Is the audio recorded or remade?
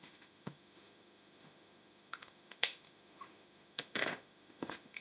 remade